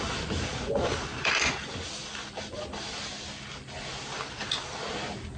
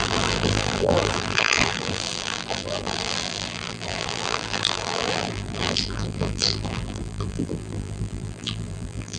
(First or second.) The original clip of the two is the first